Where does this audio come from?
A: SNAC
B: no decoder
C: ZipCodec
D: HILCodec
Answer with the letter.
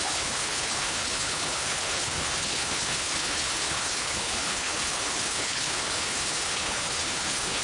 D